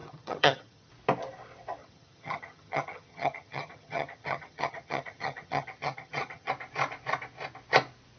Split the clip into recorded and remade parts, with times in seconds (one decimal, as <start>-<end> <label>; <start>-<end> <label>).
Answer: 0.0-0.9 remade; 0.9-1.8 recorded; 1.8-6.5 remade; 6.5-8.2 recorded